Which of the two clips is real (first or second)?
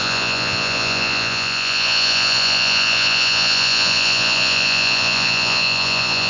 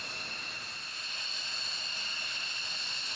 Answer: second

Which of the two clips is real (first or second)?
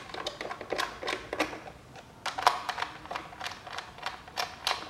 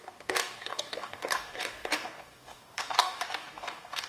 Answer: first